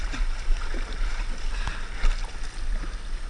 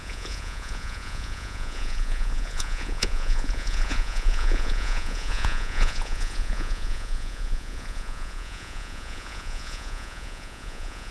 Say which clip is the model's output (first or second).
second